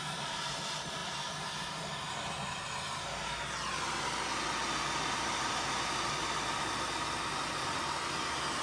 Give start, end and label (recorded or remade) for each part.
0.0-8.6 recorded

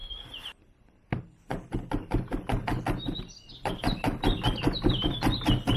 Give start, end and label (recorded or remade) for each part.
0.0-5.8 recorded

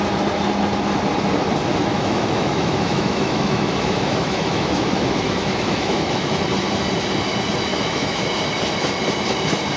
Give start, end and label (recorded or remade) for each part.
0.0-1.9 recorded; 1.9-6.4 remade; 6.4-7.7 recorded; 7.7-8.2 remade; 8.2-9.8 recorded